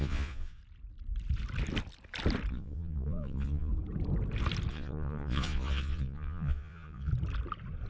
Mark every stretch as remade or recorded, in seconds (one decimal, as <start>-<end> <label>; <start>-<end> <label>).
0.0-0.6 remade; 0.6-2.5 recorded; 2.5-3.7 remade; 3.7-4.7 recorded; 4.7-7.1 remade; 7.1-7.9 recorded